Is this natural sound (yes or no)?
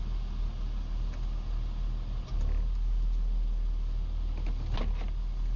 yes